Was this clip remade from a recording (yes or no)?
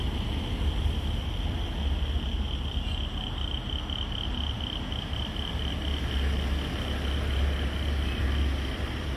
no